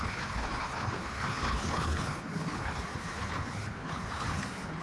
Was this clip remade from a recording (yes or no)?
yes